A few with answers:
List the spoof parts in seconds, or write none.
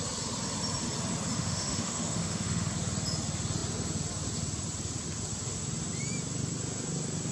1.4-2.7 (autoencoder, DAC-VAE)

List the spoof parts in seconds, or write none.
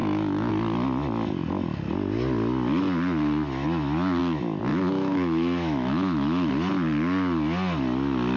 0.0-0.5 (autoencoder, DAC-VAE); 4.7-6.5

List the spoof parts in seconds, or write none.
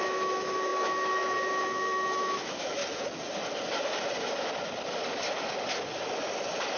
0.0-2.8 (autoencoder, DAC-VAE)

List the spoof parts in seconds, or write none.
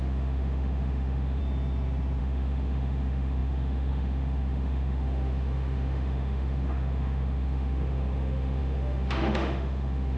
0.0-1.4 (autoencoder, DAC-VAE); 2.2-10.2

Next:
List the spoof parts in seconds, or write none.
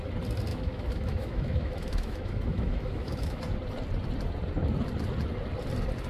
0.5-3.4 (autoencoder, DAC-VAE)